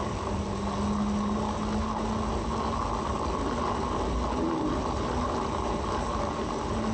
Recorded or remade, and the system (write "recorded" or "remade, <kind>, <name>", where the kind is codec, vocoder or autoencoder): recorded